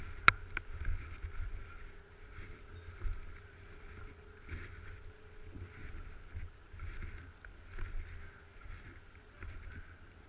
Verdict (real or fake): real